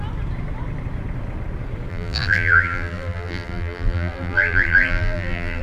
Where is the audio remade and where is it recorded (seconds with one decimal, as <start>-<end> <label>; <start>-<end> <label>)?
0.0-1.9 recorded; 1.9-5.6 remade

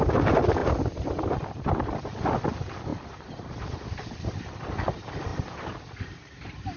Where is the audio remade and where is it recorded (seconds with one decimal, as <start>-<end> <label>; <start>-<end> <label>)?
0.0-2.9 recorded; 2.9-4.5 remade; 4.5-5.3 recorded; 5.3-6.8 remade

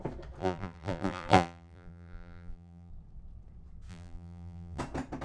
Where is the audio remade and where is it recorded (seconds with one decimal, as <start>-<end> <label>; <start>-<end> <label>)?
0.0-0.4 recorded; 0.4-2.9 remade; 2.9-3.9 recorded; 3.9-4.8 remade; 4.8-5.2 recorded